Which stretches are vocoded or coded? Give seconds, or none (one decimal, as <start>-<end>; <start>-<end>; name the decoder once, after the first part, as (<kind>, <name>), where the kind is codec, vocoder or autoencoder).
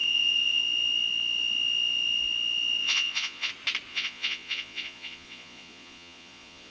0.0-0.6 (vocoder, Vocos); 2.8-3.5; 3.9-6.7